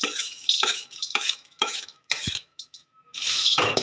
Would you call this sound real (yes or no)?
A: no